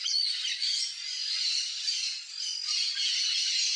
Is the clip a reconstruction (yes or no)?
no